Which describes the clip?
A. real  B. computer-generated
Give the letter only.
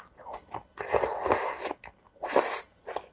A